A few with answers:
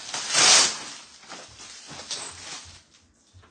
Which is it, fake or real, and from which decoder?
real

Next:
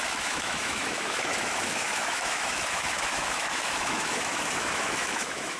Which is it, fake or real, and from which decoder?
fake, autoencoder, DAC-VAE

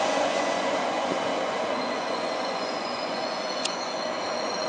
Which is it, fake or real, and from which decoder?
fake, vocoder, Vocos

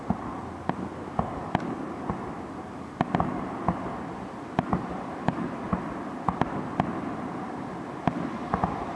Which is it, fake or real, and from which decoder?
real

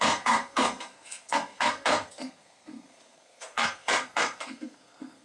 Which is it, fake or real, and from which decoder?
fake, codec, SNAC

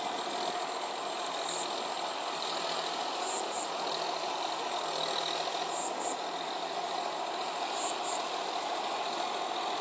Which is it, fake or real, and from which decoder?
real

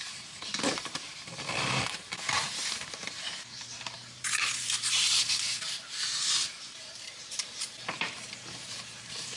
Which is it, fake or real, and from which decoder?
fake, vocoder, BigVGAN v2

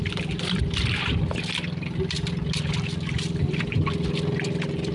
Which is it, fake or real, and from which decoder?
real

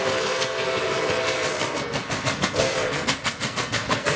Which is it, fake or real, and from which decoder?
fake, codec, SNAC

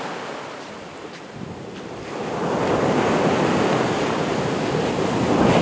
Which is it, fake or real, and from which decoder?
real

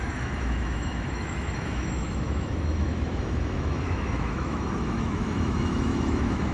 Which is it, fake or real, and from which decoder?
fake, autoencoder, DAC-VAE